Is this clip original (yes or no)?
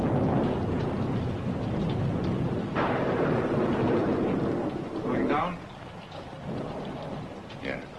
yes